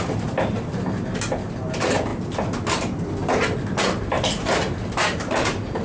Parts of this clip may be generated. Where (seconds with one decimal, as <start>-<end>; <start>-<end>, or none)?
none